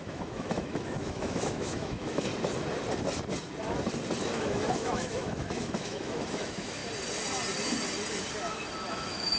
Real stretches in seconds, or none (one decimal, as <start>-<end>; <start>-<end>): 2.3-4.2; 6.8-8.9